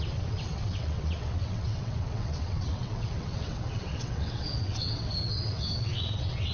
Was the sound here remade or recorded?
remade